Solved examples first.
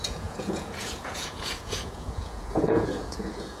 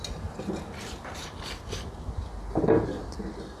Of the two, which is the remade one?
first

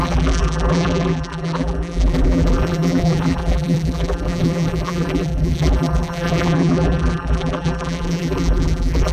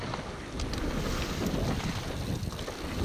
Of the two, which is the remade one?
first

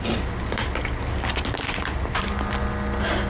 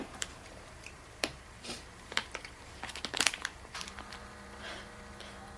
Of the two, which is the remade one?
second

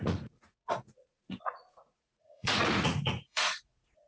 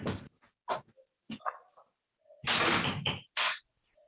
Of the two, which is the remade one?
first